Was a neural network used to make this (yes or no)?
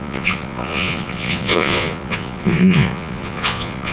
yes